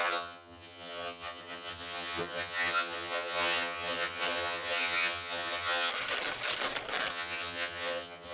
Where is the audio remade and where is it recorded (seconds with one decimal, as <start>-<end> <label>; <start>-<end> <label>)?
0.0-5.9 remade; 5.9-7.1 recorded; 7.1-8.3 remade